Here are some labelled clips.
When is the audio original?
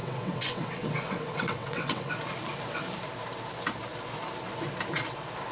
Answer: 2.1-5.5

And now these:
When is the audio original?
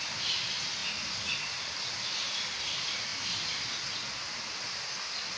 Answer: 0.0-5.4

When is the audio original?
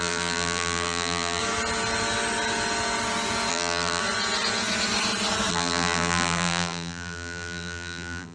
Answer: 1.4-3.5; 4.0-5.5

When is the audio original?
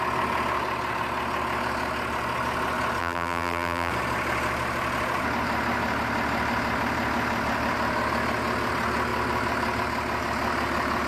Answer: 0.0-3.0; 3.9-11.1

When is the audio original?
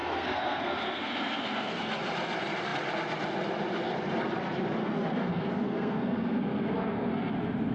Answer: 1.9-4.8; 7.3-7.7